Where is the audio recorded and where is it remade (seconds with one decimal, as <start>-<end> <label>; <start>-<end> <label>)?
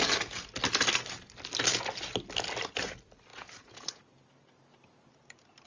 0.0-3.3 recorded; 3.3-4.0 remade; 4.0-5.7 recorded